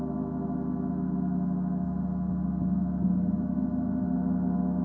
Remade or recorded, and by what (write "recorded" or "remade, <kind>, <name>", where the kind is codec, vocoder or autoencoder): recorded